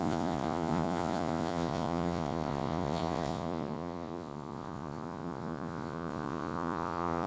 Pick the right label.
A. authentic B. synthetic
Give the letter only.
B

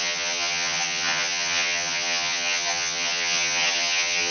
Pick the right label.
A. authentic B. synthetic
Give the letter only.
B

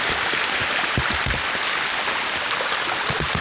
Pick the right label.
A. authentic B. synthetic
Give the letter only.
A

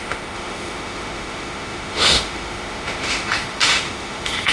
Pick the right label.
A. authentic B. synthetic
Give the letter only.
B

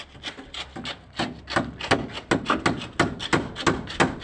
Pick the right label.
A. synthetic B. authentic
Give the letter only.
B